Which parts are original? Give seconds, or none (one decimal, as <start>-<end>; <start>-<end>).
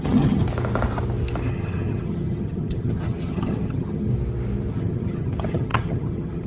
0.4-1.5; 4.1-4.7